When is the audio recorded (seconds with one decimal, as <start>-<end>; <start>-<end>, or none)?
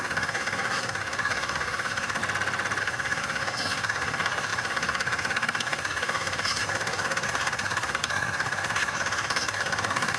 2.2-2.8